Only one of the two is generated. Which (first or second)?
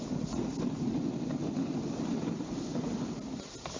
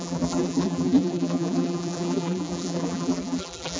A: second